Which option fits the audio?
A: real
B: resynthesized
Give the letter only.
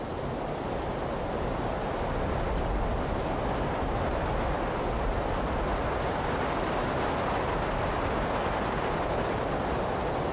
A